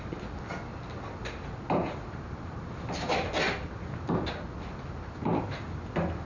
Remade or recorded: recorded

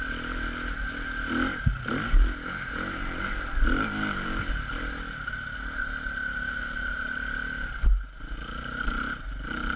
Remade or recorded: recorded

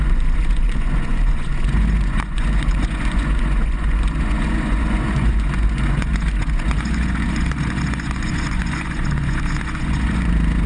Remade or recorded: remade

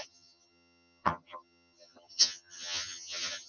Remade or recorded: remade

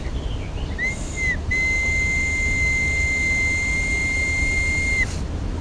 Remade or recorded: recorded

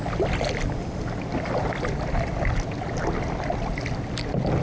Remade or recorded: recorded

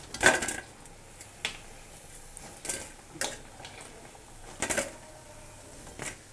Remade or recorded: recorded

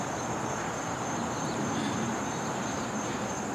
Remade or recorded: recorded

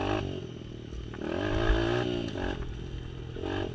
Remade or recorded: recorded